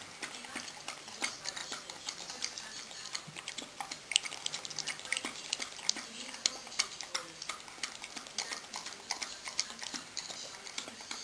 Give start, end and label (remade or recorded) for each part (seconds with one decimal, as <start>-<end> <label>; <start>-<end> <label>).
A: 0.0-11.2 recorded